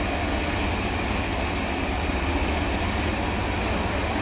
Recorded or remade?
recorded